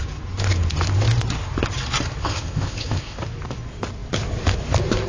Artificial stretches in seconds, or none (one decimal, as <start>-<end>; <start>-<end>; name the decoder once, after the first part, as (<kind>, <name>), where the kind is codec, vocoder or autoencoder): 2.2-3.2 (codec, ZipCodec)